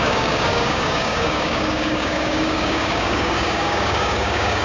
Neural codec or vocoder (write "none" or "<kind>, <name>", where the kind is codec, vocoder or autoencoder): codec, DAC